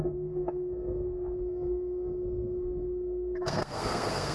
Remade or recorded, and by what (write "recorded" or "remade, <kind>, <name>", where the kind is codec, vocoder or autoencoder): remade, codec, SNAC